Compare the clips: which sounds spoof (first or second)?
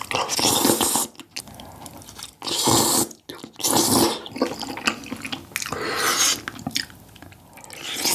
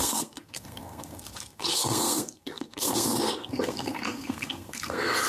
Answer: second